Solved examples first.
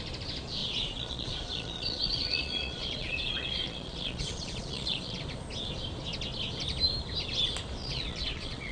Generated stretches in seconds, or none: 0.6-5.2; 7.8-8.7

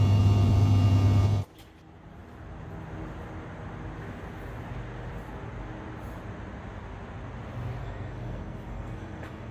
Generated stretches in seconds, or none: 7.8-9.5

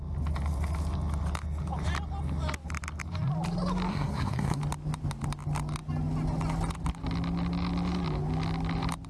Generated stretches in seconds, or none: 3.9-4.6

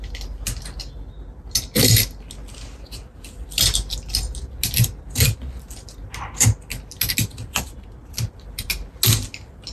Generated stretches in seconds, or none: 8.0-8.7

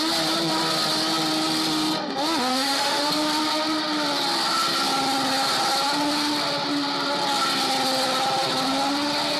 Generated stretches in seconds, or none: 2.5-3.0

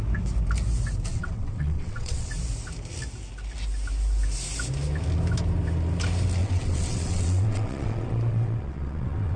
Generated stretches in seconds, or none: 1.1-2.3; 6.4-9.4

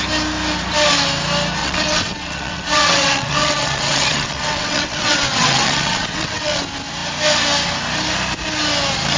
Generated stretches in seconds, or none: 1.6-6.6

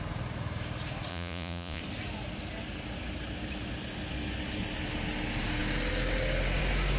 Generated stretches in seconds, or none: 1.1-1.8